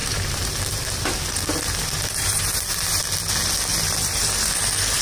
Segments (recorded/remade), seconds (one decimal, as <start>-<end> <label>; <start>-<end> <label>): 0.0-3.0 remade; 3.0-3.7 recorded; 3.7-4.5 remade; 4.5-5.0 recorded